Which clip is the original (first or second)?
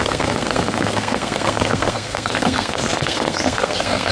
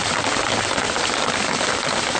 second